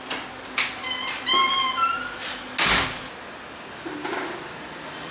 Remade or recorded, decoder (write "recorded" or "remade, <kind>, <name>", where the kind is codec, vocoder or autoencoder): recorded